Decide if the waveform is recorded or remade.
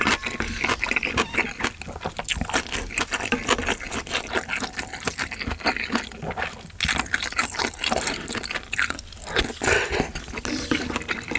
recorded